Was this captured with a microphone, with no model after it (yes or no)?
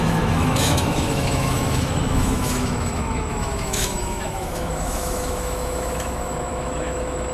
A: no